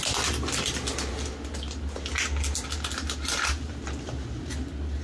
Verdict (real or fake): real